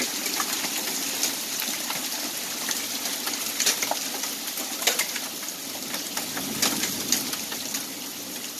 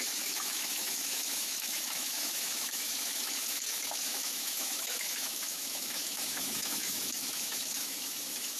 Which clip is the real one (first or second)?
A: first